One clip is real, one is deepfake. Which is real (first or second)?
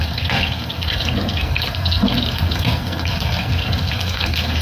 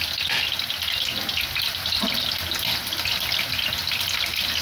second